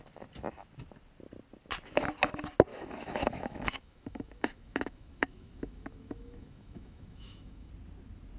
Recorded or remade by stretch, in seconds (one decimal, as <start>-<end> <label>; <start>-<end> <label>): 0.0-2.7 recorded; 2.7-7.7 remade; 7.7-8.4 recorded